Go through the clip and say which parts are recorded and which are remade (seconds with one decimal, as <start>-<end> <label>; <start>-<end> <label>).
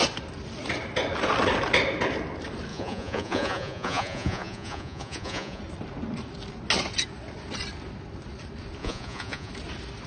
0.0-2.7 recorded; 2.7-5.6 remade; 5.6-8.8 recorded; 8.8-9.5 remade; 9.5-10.1 recorded